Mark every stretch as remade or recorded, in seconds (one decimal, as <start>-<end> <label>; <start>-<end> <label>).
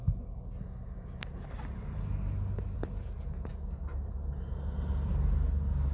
0.0-5.9 recorded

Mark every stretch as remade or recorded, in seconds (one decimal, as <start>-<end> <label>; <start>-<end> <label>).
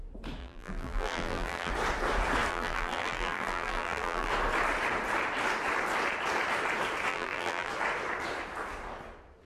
0.0-0.4 recorded; 0.4-1.7 remade; 1.7-2.5 recorded; 2.5-4.3 remade; 4.3-7.1 recorded; 7.1-7.7 remade; 7.7-9.4 recorded